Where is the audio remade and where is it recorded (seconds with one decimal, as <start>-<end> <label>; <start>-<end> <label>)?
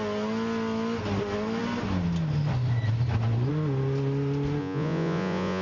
0.0-4.6 recorded; 4.6-5.6 remade